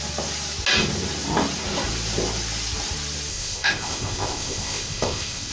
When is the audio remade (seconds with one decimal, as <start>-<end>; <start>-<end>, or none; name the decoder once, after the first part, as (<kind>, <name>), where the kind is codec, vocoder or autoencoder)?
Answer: 3.3-5.5 (codec, ZipCodec)